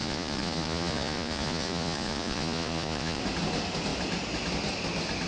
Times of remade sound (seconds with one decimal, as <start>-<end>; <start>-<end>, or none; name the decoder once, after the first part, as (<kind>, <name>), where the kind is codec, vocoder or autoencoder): 0.0-3.2 (vocoder, Vocos)